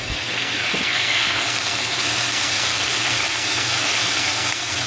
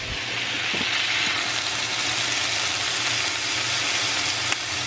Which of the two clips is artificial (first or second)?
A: first